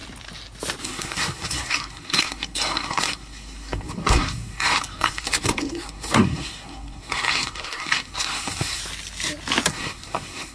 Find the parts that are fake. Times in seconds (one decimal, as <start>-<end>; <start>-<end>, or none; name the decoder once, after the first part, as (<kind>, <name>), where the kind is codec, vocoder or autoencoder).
0.8-8.8 (codec, SNAC); 9.7-10.5